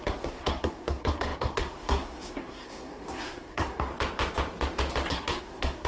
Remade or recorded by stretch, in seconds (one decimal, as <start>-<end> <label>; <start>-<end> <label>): 0.0-3.9 remade; 3.9-5.1 recorded; 5.1-5.9 remade

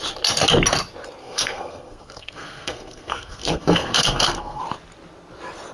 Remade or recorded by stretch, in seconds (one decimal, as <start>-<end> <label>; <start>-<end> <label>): 0.0-1.2 recorded; 1.2-4.6 remade; 4.6-5.7 recorded

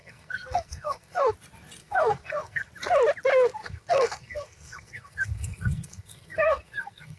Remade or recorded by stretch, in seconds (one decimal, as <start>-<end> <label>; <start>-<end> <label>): 0.0-1.3 remade; 1.3-1.8 recorded; 1.8-2.7 remade; 2.7-3.6 recorded; 3.6-7.2 remade

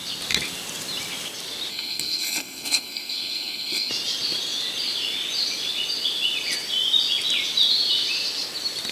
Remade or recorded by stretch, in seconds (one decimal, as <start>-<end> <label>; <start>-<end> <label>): 0.0-1.7 recorded; 1.7-3.9 remade; 3.9-8.9 recorded

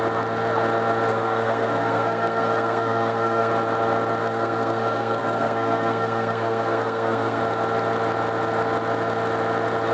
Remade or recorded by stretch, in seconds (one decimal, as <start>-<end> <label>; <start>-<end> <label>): 0.0-1.1 recorded; 1.1-3.5 remade; 3.5-4.2 recorded; 4.2-7.4 remade; 7.4-9.9 recorded

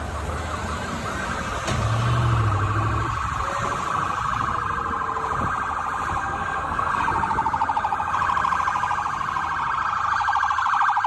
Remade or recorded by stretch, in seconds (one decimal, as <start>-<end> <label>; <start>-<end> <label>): 0.0-6.2 recorded; 6.2-7.0 remade; 7.0-11.1 recorded